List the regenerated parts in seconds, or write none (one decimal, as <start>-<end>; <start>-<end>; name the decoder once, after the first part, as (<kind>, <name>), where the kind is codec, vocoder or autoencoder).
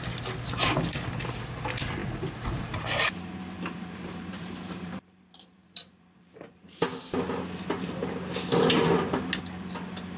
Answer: 2.0-6.8 (vocoder, BigVGAN v2)